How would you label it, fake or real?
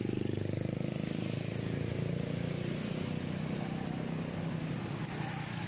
real